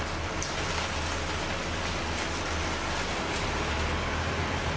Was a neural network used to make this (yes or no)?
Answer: no